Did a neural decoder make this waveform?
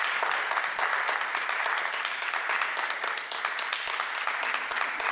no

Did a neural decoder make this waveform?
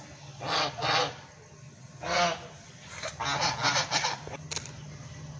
no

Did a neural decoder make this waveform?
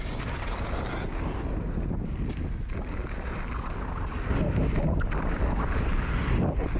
no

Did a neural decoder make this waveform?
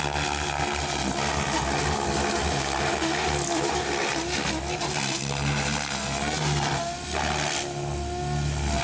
no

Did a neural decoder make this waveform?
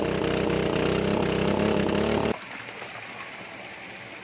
no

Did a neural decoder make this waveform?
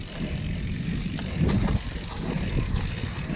no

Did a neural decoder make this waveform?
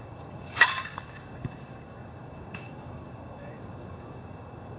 yes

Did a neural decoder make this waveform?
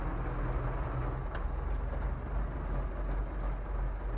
no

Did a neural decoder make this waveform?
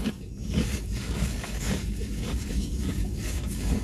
yes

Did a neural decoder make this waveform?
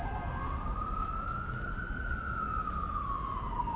no